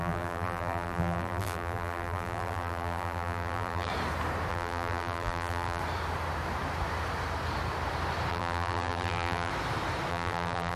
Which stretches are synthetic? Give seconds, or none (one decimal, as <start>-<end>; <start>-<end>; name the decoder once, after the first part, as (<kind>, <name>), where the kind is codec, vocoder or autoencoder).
0.0-3.9 (vocoder, BigVGAN v2); 4.5-5.8; 8.3-9.5; 10.1-10.8